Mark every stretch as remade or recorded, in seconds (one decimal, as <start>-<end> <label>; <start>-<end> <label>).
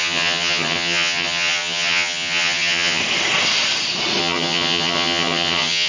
0.0-3.0 remade; 3.0-4.2 recorded; 4.2-5.9 remade